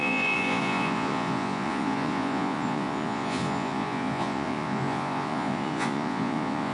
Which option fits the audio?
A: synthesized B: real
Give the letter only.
A